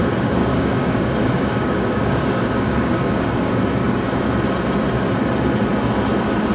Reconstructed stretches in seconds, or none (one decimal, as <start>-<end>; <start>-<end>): 0.4-3.5